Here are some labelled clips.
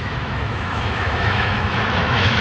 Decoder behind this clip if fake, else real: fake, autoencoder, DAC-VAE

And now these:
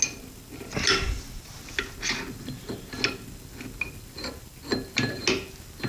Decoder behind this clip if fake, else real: real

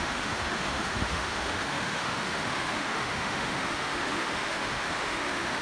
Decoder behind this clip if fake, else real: fake, autoencoder, DAC-VAE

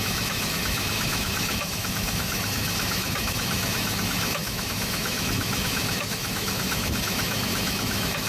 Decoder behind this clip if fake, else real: fake, autoencoder, DAC-VAE